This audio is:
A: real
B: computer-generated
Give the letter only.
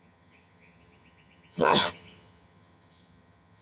B